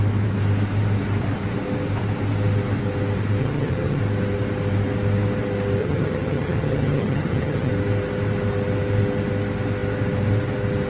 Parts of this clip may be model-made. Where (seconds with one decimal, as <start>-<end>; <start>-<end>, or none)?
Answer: 3.4-4.0; 5.8-7.7